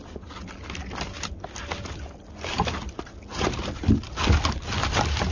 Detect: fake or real real